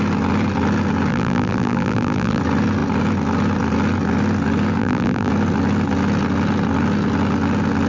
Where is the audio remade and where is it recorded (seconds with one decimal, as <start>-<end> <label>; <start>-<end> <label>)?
0.0-1.1 recorded; 1.1-2.4 remade; 2.4-4.8 recorded; 4.8-5.3 remade; 5.3-7.9 recorded